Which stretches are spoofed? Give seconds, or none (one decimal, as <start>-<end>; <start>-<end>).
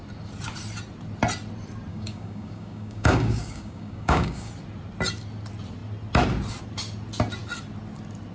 1.9-4.5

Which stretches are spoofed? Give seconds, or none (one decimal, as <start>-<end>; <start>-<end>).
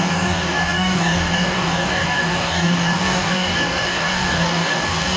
0.0-5.2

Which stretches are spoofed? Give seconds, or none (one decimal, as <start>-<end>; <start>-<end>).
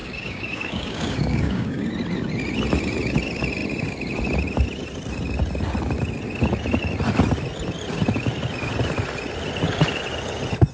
0.0-1.9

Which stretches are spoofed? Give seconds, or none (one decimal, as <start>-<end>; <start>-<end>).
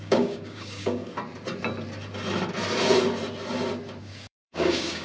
0.0-1.0; 4.0-5.0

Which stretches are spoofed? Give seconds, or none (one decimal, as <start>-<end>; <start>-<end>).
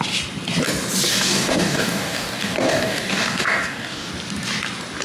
1.1-4.1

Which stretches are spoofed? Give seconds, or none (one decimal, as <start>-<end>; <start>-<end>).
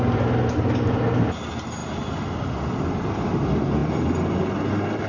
none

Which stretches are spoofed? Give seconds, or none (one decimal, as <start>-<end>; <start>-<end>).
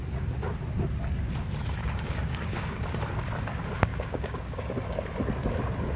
1.8-2.9; 3.9-4.7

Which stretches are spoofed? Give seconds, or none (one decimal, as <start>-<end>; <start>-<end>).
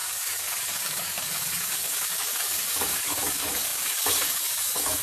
0.0-5.0